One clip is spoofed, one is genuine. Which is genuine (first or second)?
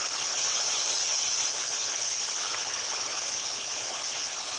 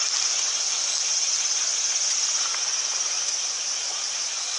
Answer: second